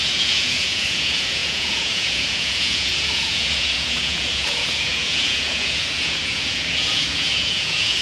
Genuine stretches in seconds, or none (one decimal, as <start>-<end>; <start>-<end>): none